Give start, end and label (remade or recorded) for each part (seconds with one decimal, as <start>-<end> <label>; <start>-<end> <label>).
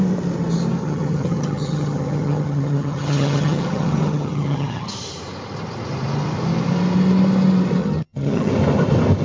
0.0-0.8 recorded; 0.8-4.9 remade; 4.9-7.8 recorded; 7.8-8.5 remade; 8.5-9.2 recorded